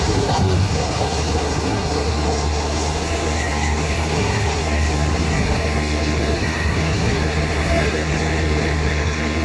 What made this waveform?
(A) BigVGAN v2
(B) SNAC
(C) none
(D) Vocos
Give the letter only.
B